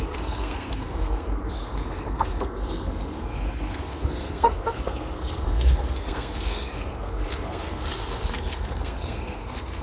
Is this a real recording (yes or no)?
no